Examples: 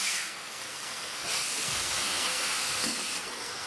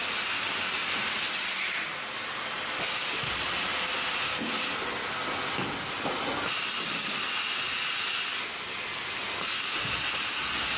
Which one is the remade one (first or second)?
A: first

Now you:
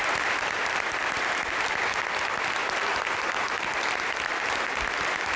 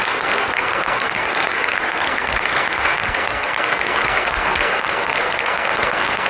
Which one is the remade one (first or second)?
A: second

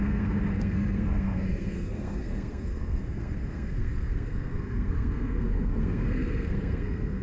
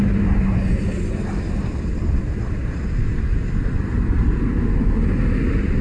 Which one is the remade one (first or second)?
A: first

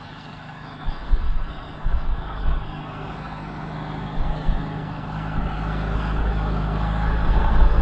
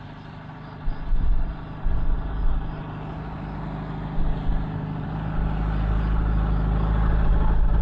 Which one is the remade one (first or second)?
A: first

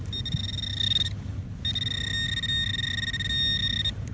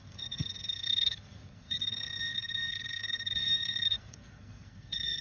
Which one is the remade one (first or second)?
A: second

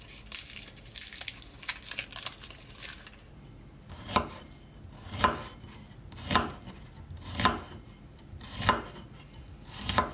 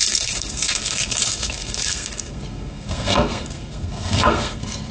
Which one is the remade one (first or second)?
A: second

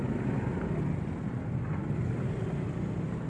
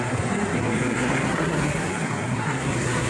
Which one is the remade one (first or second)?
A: second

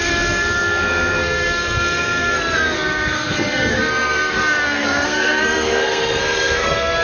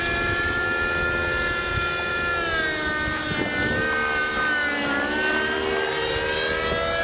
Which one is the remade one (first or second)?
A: first